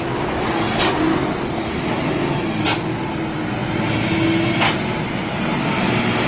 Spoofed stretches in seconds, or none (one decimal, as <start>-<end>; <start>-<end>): none